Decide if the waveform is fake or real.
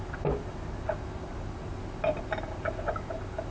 real